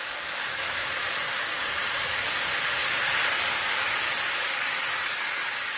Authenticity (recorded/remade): remade